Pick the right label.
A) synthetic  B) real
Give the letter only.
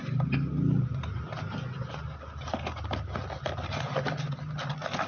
B